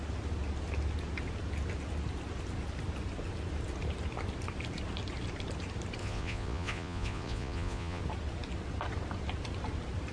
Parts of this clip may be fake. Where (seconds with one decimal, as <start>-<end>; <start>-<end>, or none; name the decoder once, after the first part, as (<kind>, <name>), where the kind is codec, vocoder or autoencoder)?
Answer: 6.0-8.0 (vocoder, Vocos)